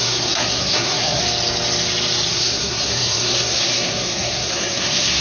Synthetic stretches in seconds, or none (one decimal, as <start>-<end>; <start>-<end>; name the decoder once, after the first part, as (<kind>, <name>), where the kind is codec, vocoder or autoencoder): 0.0-1.2 (codec, SNAC); 2.3-5.2